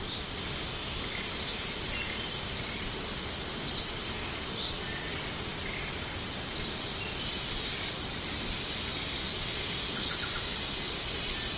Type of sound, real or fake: real